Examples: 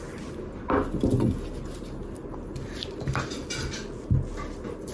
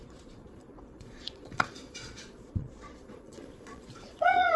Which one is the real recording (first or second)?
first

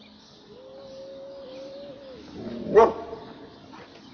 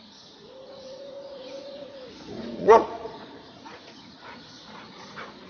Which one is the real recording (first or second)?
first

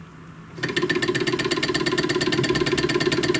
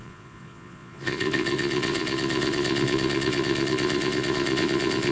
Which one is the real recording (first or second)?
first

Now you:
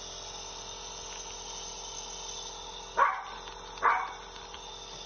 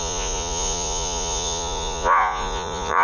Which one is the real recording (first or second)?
first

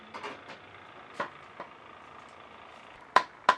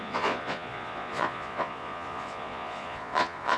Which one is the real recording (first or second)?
first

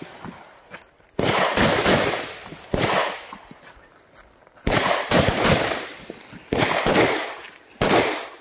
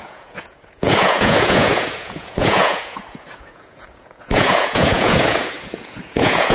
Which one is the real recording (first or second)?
first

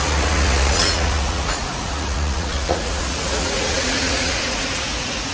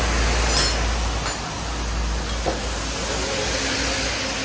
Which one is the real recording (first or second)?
second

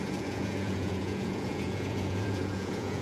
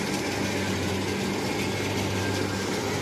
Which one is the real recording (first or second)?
second